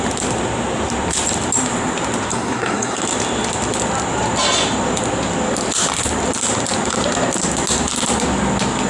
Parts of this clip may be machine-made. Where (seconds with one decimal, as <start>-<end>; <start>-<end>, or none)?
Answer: 2.3-3.0